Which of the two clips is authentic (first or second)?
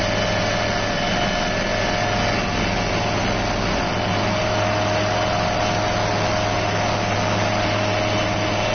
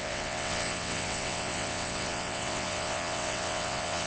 first